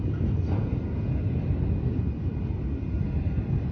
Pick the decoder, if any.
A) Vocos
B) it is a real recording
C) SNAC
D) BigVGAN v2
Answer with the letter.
B